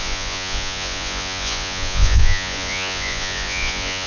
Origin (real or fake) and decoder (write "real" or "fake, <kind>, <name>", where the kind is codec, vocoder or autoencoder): fake, vocoder, Vocos